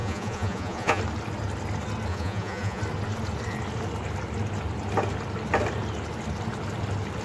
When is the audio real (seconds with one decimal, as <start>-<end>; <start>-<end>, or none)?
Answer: 1.0-2.1; 2.8-7.2